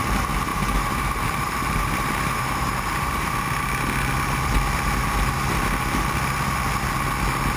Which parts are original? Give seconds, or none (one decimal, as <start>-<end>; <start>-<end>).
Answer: 0.0-0.5; 3.8-7.6